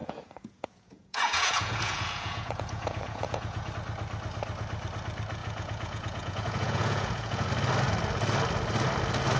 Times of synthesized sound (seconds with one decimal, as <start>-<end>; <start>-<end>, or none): 0.0-3.7; 5.4-7.5

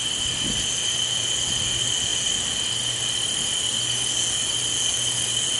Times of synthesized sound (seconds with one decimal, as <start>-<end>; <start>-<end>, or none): none

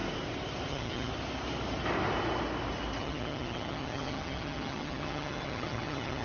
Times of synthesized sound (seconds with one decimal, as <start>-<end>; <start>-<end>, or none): 0.7-1.1; 3.0-6.2